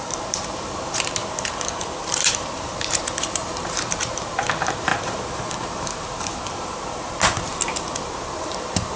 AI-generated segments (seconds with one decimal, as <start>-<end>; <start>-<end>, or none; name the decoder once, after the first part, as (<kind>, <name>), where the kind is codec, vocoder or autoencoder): 0.0-1.2 (vocoder, BigVGAN v2); 2.0-4.9; 8.0-9.0

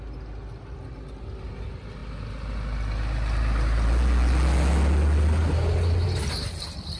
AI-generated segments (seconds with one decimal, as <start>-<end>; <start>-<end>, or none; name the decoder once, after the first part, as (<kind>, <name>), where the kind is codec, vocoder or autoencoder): none